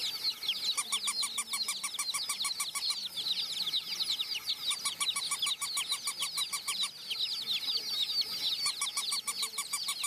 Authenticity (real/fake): real